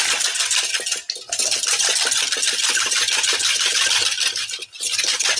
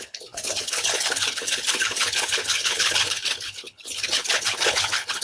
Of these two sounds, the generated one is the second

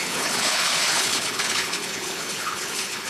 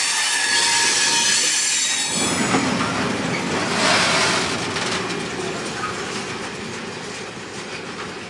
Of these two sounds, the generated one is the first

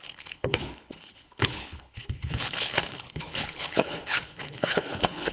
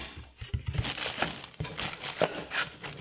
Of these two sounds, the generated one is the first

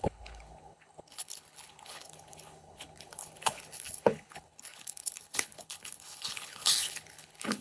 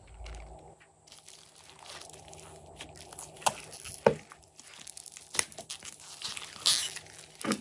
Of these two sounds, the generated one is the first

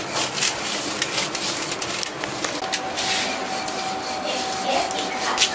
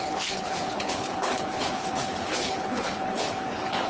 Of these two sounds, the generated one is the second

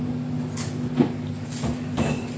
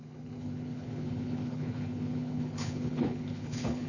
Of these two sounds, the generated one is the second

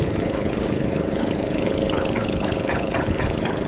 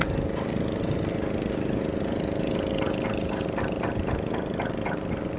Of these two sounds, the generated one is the first